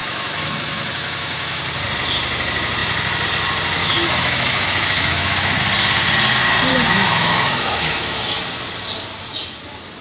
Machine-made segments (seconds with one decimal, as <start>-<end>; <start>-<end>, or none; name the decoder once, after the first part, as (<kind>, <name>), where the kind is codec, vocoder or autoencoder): 0.0-1.6 (autoencoder, DAC-VAE); 3.8-5.6; 6.7-8.4